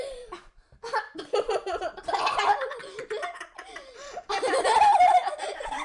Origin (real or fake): fake